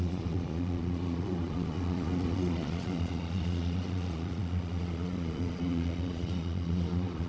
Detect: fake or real fake